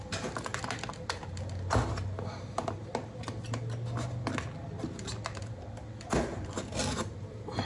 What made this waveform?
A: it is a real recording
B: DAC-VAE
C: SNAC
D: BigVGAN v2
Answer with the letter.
A